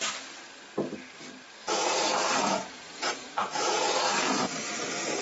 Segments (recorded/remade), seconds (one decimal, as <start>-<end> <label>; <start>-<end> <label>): 0.0-1.6 recorded; 1.6-4.7 remade; 4.7-5.2 recorded